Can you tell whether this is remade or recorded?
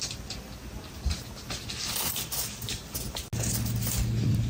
recorded